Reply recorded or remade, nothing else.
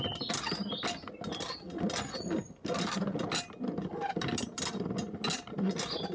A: recorded